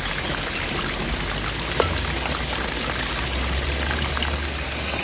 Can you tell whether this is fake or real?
real